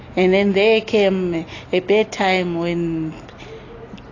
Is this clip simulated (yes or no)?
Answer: no